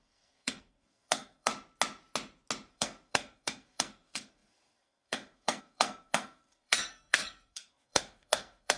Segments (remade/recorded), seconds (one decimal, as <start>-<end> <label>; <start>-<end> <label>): 0.0-1.5 remade; 1.5-2.7 recorded; 2.7-8.8 remade

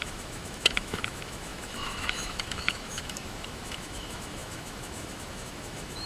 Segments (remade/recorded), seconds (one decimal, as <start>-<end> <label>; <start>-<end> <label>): 0.0-6.1 remade

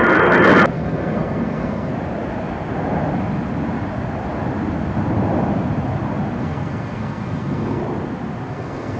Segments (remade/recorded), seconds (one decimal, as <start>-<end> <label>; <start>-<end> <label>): 0.0-0.7 recorded; 0.7-1.9 remade; 1.9-6.4 recorded; 6.4-7.8 remade; 7.8-8.5 recorded; 8.5-9.0 remade

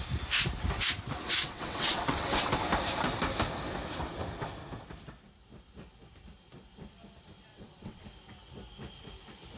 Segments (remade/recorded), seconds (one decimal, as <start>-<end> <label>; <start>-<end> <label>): 0.0-1.4 recorded; 1.4-2.6 remade; 2.6-7.5 recorded; 7.5-8.0 remade; 8.0-9.6 recorded